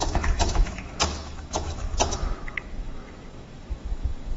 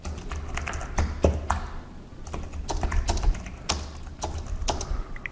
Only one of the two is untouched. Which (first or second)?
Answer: second